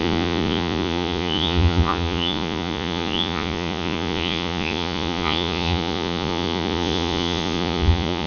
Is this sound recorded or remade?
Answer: remade